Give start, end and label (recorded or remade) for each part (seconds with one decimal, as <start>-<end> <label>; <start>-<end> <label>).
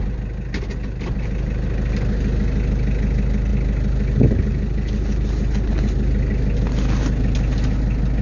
0.0-8.2 recorded